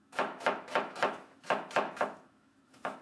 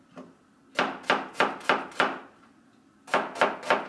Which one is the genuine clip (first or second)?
second